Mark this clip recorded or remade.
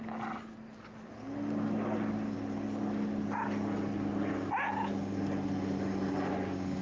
recorded